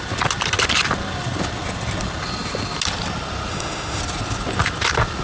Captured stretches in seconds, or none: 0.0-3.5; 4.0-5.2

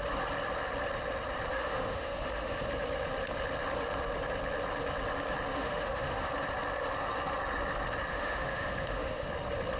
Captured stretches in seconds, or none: 0.0-1.5; 2.7-5.5; 6.3-8.1; 9.3-9.8

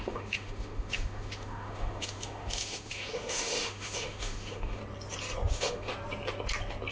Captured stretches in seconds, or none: 4.8-5.5; 5.9-6.9

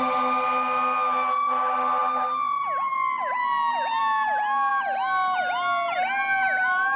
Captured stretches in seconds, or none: 0.0-7.0